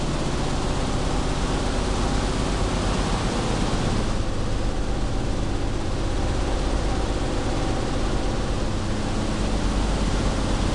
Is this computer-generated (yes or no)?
no